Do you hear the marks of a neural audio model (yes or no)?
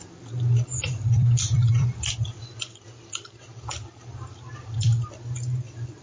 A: yes